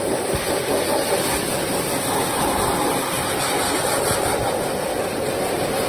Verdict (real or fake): real